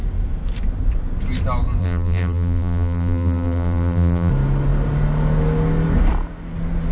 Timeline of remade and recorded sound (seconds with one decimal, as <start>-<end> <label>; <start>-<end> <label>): 0.0-1.8 recorded; 1.8-4.3 remade; 4.3-6.9 recorded